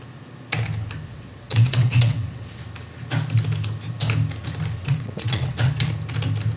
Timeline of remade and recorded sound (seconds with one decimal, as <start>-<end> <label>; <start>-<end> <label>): 0.0-1.1 recorded; 1.1-2.6 remade; 2.6-4.8 recorded; 4.8-5.8 remade; 5.8-6.6 recorded